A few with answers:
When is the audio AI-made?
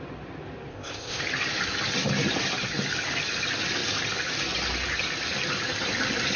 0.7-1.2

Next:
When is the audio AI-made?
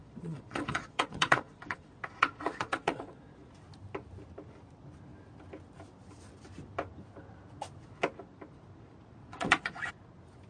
0.0-3.5; 9.2-9.9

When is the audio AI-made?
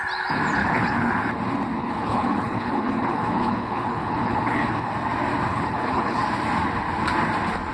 0.6-1.2; 1.8-4.9; 5.5-6.2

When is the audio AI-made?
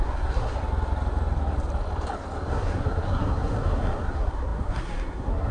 0.0-0.6; 2.5-5.5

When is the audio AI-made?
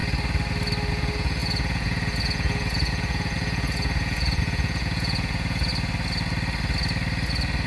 0.9-5.7